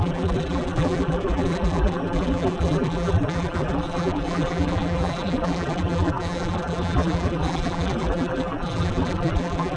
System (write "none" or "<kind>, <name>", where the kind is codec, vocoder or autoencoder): vocoder, BigVGAN v2